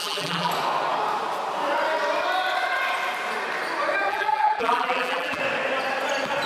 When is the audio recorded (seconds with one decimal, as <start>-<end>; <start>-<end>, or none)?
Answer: 0.5-4.1; 5.4-6.5